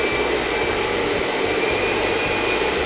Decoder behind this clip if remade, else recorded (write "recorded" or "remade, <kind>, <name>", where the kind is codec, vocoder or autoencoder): recorded